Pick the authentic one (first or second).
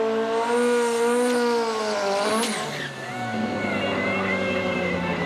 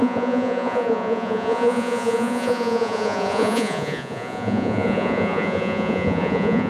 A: first